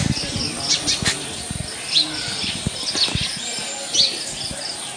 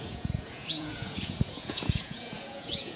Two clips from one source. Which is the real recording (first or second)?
first